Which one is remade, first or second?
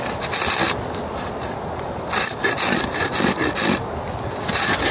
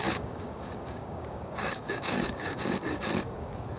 second